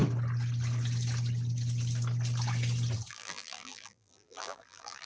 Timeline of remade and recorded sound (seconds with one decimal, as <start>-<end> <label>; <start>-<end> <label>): 0.0-3.1 recorded; 3.1-5.1 remade